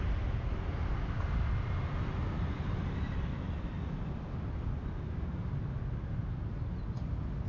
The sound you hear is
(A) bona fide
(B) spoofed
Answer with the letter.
A